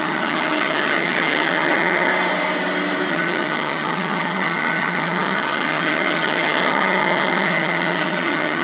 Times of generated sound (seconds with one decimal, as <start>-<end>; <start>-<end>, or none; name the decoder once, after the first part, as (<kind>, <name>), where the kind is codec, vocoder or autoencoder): 0.0-2.1 (vocoder, HiFi-GAN); 3.1-8.6